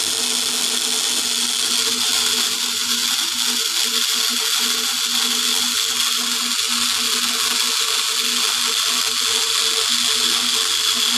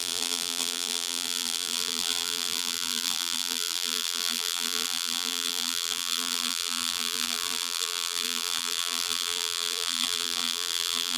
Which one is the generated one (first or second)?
second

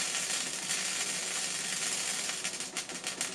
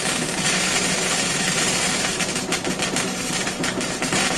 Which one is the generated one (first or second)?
second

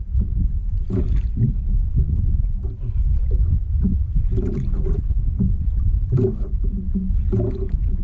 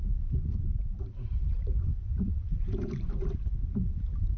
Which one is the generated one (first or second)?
second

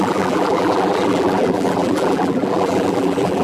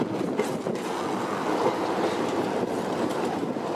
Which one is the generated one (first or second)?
first